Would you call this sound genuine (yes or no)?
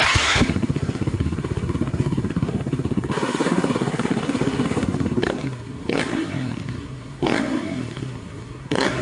no